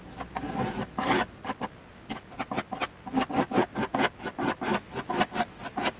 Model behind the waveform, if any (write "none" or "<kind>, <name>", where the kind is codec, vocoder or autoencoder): none